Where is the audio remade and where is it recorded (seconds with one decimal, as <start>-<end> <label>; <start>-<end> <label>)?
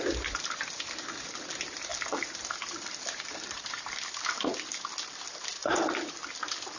0.0-1.9 recorded; 1.9-4.7 remade; 4.7-5.6 recorded; 5.6-6.3 remade; 6.3-6.8 recorded